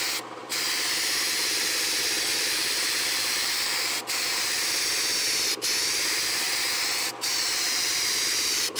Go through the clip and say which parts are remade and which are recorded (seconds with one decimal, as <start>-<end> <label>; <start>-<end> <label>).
0.0-0.4 recorded; 0.4-4.9 remade; 4.9-7.9 recorded; 7.9-8.8 remade